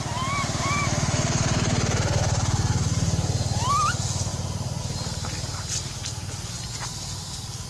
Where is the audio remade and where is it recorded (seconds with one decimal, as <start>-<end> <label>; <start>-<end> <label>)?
0.0-4.3 recorded; 4.3-4.8 remade; 4.8-7.7 recorded